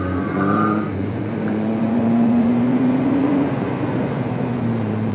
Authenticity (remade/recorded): remade